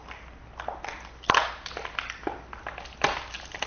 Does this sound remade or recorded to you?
recorded